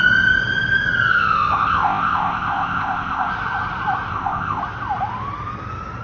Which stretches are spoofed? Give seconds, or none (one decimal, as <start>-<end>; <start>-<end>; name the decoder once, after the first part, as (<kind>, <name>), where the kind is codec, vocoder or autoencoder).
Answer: 1.1-3.3 (codec, ZipCodec); 4.1-4.6